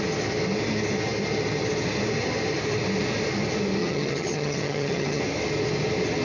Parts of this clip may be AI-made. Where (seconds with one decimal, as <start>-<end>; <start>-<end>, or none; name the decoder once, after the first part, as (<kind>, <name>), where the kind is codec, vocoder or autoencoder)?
3.8-5.2 (vocoder, HiFi-GAN)